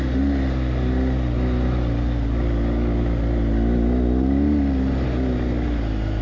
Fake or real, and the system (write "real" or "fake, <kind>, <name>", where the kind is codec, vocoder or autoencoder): real